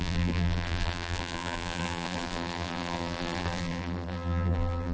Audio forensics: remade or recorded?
remade